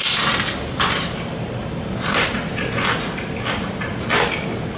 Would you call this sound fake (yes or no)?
no